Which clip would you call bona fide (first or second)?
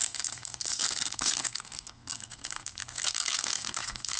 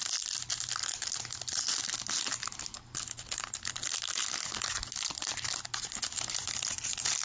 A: second